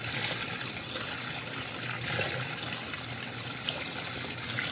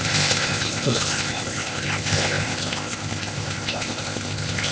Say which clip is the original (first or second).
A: first